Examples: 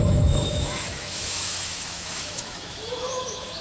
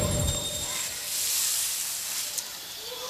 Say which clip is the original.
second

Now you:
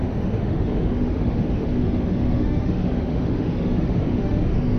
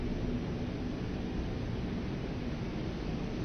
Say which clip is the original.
second